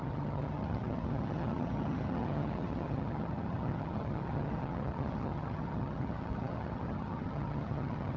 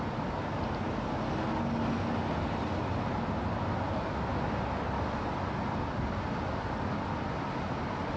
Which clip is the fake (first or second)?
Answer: first